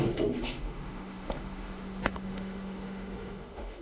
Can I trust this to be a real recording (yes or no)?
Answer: no